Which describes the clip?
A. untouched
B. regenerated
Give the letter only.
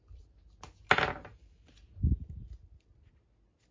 A